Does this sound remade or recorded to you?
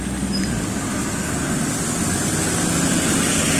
recorded